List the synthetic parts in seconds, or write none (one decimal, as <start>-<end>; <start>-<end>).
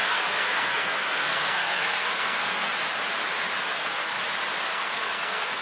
0.0-2.7; 3.7-4.2; 4.7-5.6